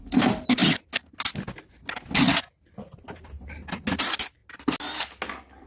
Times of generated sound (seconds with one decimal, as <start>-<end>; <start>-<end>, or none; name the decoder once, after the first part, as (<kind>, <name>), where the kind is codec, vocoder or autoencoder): none